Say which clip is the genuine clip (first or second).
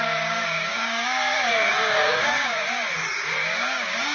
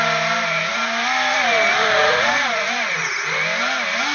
second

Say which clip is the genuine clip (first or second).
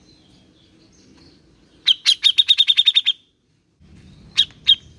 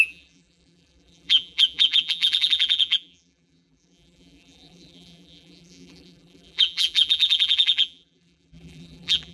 first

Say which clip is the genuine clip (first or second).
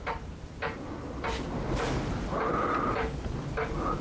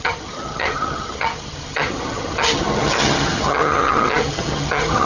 first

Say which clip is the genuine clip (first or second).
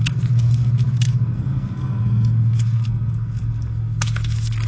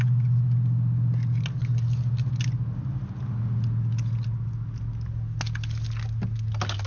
second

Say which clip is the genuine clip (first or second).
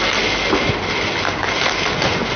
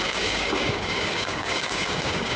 first